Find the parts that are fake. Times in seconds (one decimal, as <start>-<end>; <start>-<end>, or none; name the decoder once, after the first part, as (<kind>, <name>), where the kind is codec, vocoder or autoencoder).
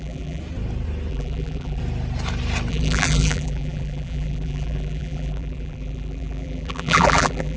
0.0-0.4 (vocoder, BigVGAN v2); 1.1-1.8; 2.7-7.6